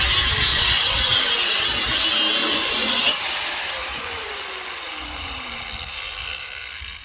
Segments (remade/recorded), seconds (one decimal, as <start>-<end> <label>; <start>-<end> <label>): 0.0-0.5 recorded; 0.5-1.6 remade; 1.6-2.4 recorded; 2.4-3.2 remade; 3.2-3.8 recorded; 3.8-5.6 remade; 5.6-7.0 recorded